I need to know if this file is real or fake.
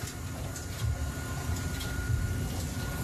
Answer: fake